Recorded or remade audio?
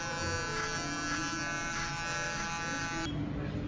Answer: recorded